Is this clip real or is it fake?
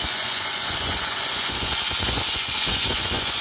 fake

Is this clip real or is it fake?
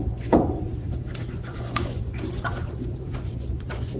fake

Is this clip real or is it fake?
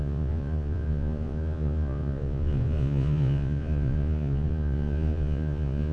fake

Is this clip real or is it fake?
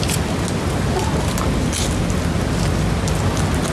real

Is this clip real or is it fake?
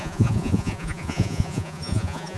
fake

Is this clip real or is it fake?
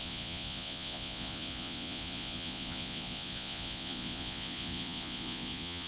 fake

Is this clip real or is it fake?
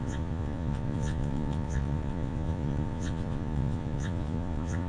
fake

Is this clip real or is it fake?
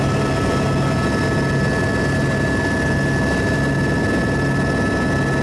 real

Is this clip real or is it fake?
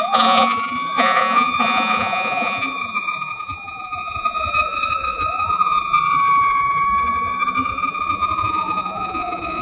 fake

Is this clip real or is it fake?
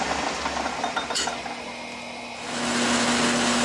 real